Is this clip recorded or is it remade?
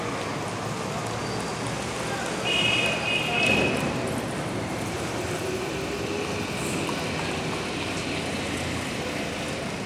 recorded